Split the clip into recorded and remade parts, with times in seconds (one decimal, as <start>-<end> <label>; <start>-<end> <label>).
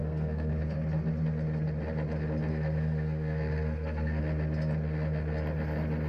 0.0-0.5 remade; 0.5-2.5 recorded; 2.5-4.2 remade; 4.2-6.1 recorded